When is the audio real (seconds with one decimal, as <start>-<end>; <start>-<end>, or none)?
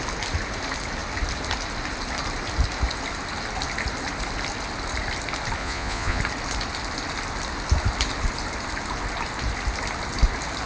0.0-5.6; 6.2-10.7